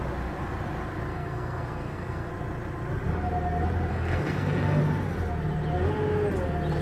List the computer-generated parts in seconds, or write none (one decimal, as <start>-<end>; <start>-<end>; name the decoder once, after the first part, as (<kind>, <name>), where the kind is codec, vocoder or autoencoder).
1.1-2.3 (codec, SNAC); 3.9-4.8